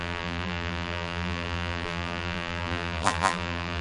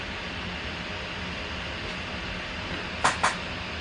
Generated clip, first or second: first